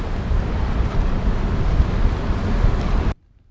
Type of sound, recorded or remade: remade